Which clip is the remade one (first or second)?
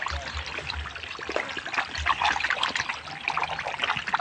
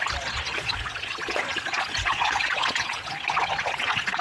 second